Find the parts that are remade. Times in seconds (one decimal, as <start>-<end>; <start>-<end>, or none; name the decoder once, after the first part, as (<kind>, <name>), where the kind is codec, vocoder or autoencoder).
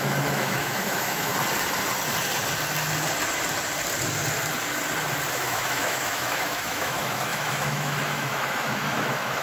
0.0-1.3 (autoencoder, DAC-VAE); 5.3-9.4